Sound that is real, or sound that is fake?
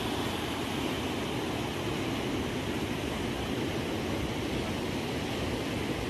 real